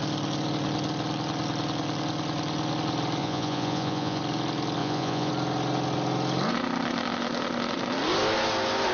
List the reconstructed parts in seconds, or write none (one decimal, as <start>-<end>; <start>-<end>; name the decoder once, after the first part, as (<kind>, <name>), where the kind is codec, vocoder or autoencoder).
3.2-4.2 (vocoder, Vocos); 4.8-5.3